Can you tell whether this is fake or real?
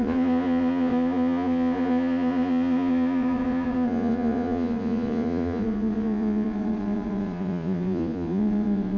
fake